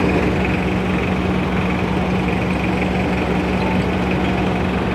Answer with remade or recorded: recorded